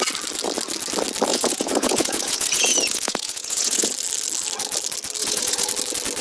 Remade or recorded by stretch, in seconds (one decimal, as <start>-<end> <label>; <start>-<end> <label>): 0.0-1.3 recorded; 1.3-3.9 remade; 3.9-5.2 recorded; 5.2-5.7 remade; 5.7-6.2 recorded